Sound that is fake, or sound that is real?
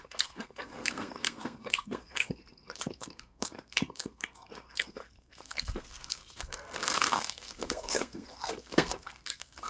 fake